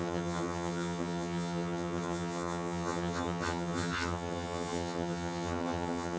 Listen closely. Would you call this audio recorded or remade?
remade